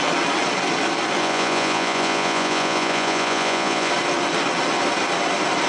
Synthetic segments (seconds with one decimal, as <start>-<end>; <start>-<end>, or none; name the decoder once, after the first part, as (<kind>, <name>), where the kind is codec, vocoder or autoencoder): 1.2-3.9 (vocoder, Vocos)